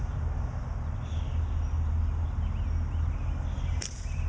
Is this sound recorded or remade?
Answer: recorded